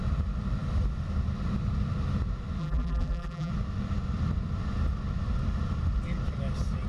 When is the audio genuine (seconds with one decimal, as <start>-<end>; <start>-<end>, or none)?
0.0-2.6; 3.5-6.9